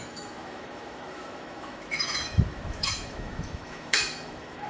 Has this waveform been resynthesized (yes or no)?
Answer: yes